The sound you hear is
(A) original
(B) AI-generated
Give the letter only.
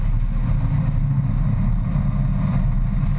A